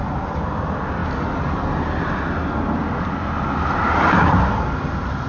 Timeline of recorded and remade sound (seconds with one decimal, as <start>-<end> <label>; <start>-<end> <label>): 0.0-5.3 recorded